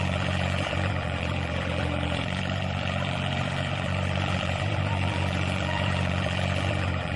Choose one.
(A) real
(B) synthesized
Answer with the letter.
B